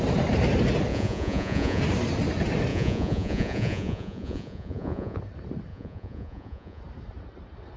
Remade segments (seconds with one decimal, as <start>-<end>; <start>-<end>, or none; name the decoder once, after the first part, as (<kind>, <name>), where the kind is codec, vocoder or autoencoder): 0.9-1.8 (vocoder, Vocos); 2.7-5.2; 5.7-6.8